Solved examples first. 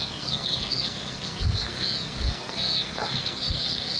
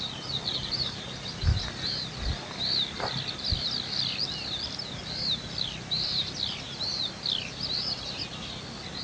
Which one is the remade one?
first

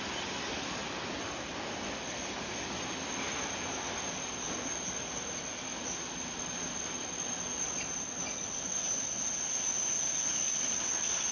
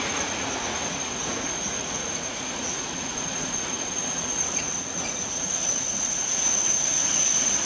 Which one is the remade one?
second